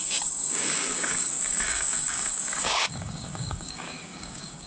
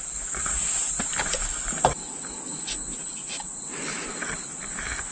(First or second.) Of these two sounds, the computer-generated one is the first